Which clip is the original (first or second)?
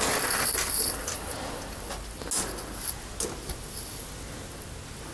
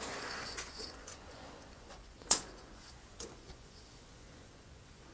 first